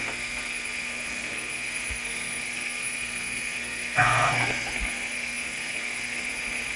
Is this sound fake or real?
fake